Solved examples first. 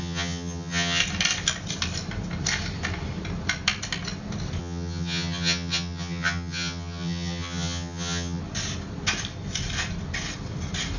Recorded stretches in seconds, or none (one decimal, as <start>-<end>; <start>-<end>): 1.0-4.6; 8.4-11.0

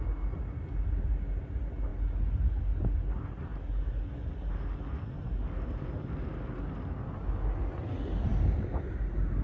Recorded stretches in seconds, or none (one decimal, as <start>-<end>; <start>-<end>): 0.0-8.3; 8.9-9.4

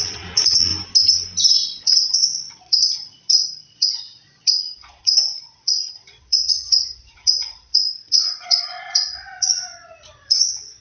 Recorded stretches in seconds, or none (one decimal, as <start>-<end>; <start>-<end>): 0.7-1.5

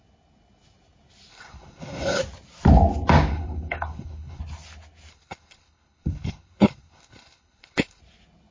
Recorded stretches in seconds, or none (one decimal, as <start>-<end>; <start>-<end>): 0.0-1.3; 2.2-3.3; 4.4-5.1; 8.0-8.5

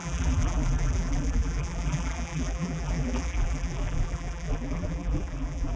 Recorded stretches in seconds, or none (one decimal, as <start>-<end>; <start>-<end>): none

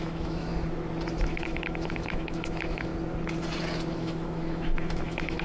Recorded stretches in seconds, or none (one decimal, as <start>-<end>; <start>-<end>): 0.5-1.2; 2.9-3.9